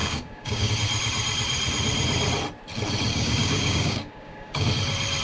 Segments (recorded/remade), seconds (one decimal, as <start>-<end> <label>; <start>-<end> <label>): 0.0-0.7 remade; 0.7-3.1 recorded; 3.1-4.7 remade; 4.7-5.2 recorded